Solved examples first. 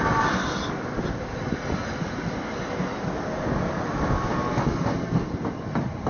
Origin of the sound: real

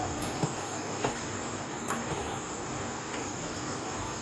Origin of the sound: fake